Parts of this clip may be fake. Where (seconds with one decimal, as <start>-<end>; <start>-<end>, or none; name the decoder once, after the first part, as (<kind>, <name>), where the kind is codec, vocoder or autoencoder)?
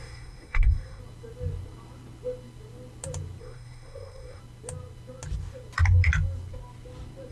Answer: 0.0-1.0 (codec, SNAC); 3.4-4.4